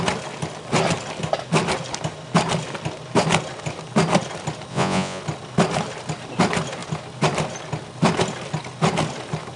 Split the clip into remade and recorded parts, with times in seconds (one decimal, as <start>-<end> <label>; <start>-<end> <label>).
0.0-4.7 recorded; 4.7-5.2 remade; 5.2-9.6 recorded